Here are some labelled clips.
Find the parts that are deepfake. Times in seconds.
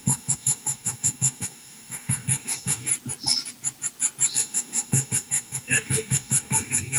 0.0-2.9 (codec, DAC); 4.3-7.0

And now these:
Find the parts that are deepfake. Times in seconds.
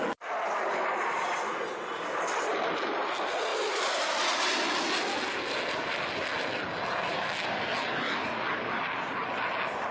7.1-8.8 (codec, DAC)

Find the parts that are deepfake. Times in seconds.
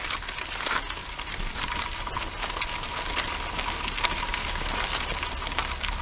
none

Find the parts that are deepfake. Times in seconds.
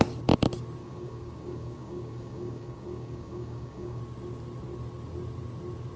0.8-4.0 (codec, DAC)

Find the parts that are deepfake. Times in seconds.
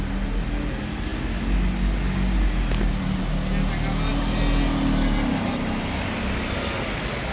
none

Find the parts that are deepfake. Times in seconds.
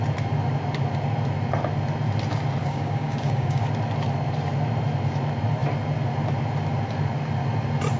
2.6-3.6 (codec, DAC)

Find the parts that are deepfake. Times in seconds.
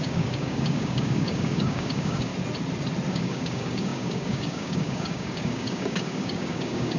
0.0-2.3 (codec, DAC); 3.1-7.0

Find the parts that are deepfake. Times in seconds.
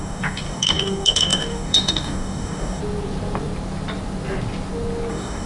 0.0-2.8 (codec, DAC); 5.1-5.5